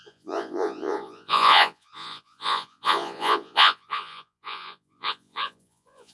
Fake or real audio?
fake